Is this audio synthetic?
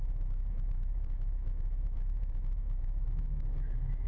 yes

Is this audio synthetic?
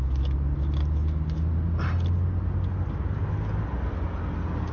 no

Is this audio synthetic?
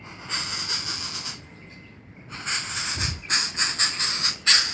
no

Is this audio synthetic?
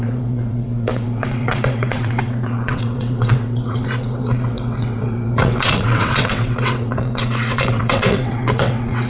yes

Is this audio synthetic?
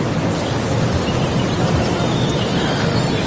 no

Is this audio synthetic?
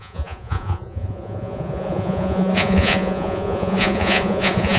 yes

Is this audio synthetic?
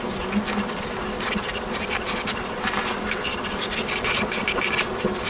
no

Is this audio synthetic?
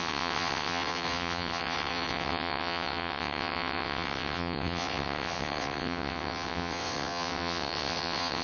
yes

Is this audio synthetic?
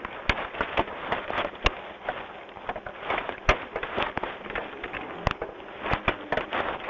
no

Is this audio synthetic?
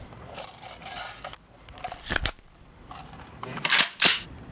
no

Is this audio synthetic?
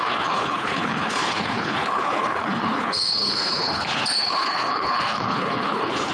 yes